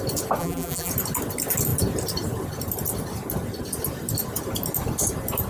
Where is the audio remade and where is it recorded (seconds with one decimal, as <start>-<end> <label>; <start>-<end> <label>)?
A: 0.0-0.4 recorded; 0.4-0.9 remade; 0.9-5.5 recorded